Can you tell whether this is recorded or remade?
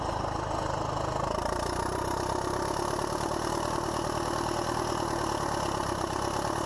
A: recorded